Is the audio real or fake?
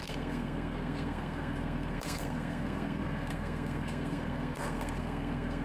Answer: fake